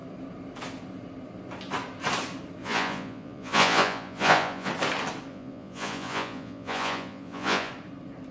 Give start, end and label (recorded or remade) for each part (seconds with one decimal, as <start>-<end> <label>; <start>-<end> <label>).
0.0-2.6 recorded; 2.6-4.7 remade; 4.7-5.3 recorded; 5.3-7.7 remade; 7.7-8.3 recorded